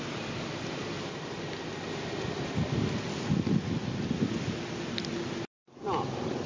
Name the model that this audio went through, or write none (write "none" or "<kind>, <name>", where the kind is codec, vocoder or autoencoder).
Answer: none